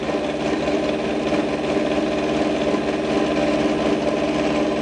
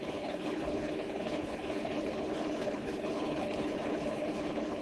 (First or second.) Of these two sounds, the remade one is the second